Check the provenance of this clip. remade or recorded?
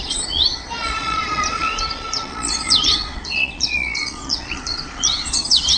remade